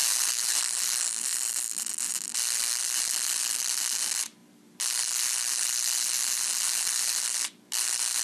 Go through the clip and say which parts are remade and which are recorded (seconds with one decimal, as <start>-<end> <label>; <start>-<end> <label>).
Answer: 0.0-0.6 remade; 0.6-8.2 recorded

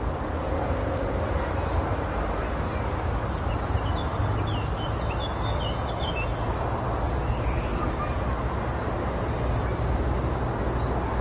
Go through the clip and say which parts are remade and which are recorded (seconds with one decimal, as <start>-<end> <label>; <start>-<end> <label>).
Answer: 0.0-11.2 recorded

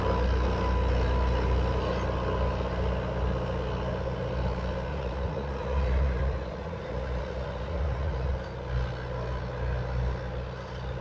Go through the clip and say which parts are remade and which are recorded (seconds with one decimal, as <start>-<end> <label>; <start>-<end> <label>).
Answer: 0.0-4.9 recorded; 4.9-8.3 remade; 8.3-11.0 recorded

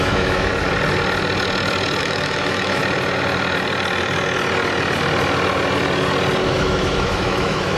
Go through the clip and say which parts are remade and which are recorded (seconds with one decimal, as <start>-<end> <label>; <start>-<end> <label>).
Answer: 0.0-0.5 remade; 0.5-2.0 recorded; 2.0-2.8 remade; 2.8-6.5 recorded; 6.5-7.8 remade

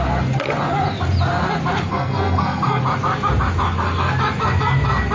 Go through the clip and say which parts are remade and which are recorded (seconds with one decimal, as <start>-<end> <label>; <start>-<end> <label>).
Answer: 0.0-1.9 recorded; 1.9-2.8 remade; 2.8-5.1 recorded